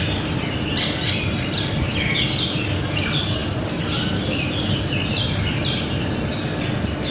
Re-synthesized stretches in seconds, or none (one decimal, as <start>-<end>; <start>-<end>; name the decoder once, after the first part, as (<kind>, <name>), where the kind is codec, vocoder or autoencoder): none